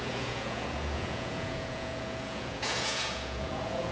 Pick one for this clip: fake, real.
fake